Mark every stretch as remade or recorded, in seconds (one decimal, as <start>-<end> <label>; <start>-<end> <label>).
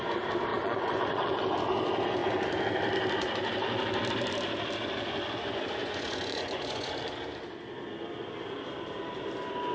0.0-0.5 recorded; 0.5-1.4 remade; 1.4-5.8 recorded; 5.8-7.0 remade; 7.0-9.7 recorded